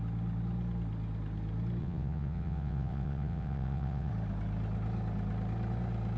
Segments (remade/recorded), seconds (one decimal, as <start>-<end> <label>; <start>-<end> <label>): 0.0-1.8 recorded; 1.8-4.1 remade; 4.1-6.2 recorded